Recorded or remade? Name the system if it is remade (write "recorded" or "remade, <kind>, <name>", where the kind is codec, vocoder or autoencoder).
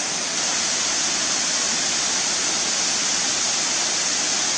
recorded